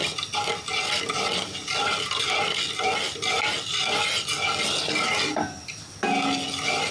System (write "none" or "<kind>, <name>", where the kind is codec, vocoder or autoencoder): none